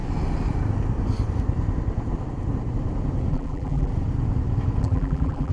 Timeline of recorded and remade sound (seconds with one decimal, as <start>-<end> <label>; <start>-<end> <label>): 0.0-3.3 recorded; 3.3-3.9 remade; 3.9-4.8 recorded; 4.8-5.5 remade